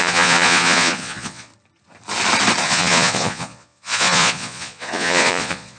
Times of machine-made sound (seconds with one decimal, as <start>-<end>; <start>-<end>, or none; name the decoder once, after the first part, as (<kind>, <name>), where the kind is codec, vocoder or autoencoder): 0.0-1.5 (vocoder, Vocos); 2.6-5.8

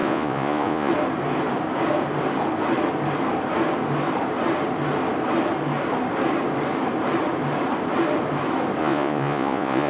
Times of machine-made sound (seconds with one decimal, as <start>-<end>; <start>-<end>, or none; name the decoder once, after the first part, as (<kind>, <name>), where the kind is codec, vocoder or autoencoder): 0.0-0.9 (vocoder, Vocos); 8.8-9.9

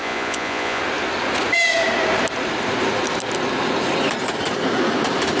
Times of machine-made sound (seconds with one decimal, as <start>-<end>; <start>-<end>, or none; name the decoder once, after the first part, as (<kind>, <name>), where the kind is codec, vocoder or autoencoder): 0.0-0.8 (vocoder, Vocos)

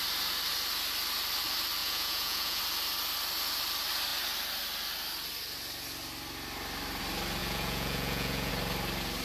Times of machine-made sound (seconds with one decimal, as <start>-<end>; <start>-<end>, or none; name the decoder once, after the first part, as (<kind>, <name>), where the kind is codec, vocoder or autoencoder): 1.8-2.6 (vocoder, Vocos); 7.4-8.5

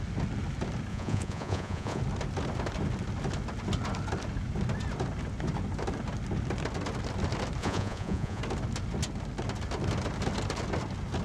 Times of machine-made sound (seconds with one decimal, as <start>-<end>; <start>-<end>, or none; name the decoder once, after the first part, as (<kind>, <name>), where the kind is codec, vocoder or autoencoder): 0.9-2.0 (vocoder, Vocos); 7.6-8.4

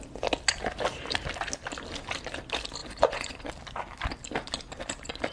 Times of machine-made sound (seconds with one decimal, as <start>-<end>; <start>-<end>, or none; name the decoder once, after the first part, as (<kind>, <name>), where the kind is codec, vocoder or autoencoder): 2.8-3.5 (vocoder, Vocos)

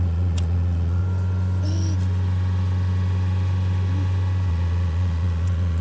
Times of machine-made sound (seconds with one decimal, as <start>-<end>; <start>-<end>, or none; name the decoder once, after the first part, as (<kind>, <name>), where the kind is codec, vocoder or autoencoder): 0.0-1.0 (vocoder, Vocos); 4.5-5.8